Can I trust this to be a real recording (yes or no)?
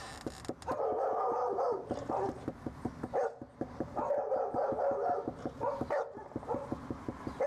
yes